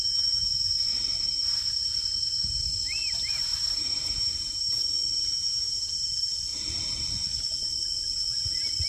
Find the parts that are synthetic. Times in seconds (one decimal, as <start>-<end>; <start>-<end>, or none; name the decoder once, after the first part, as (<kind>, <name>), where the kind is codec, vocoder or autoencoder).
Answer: 2.4-3.0 (vocoder, BigVGAN v2); 3.5-5.1